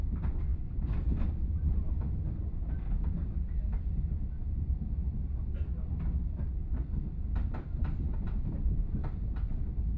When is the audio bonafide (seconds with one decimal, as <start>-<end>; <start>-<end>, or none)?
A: 0.0-10.0